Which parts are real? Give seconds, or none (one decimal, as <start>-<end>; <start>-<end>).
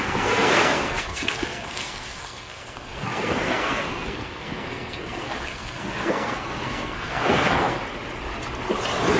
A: 7.8-9.2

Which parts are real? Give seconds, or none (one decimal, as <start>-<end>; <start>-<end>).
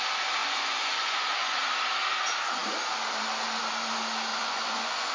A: 0.0-0.4; 1.6-4.3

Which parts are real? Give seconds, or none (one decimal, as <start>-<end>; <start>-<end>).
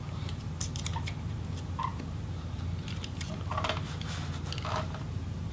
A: 0.0-5.5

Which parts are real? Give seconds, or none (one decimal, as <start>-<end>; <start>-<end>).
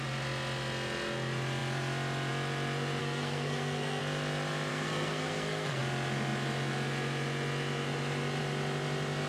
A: 0.0-3.0; 4.0-4.7; 5.8-9.3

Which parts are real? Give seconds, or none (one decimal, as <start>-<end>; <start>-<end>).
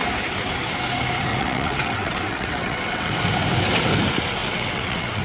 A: 0.0-1.3; 3.1-4.4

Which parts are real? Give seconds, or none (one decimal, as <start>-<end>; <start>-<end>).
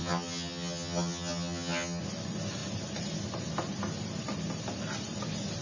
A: 2.0-5.6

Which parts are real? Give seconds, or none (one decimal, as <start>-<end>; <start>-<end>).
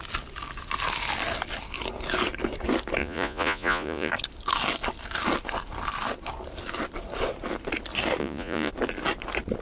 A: 0.0-3.0; 4.1-8.2; 8.7-9.6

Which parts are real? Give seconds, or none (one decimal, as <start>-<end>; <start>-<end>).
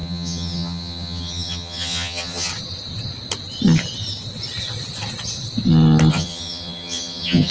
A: 2.5-6.1